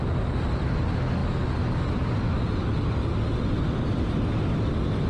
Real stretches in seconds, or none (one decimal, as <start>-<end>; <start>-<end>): 0.0-5.1